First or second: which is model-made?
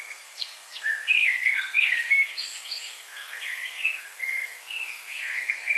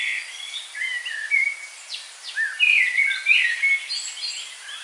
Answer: first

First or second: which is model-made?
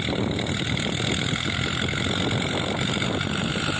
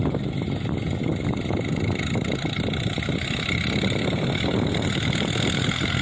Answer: first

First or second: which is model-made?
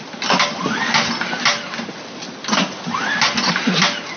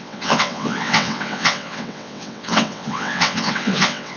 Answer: second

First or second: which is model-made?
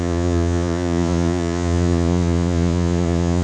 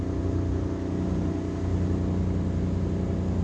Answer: first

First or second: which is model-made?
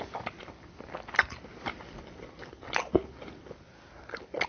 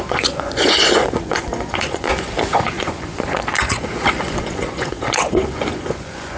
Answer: second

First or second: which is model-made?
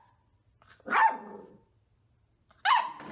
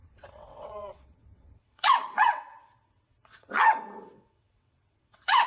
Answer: second